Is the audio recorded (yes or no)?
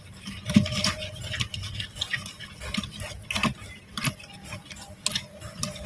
no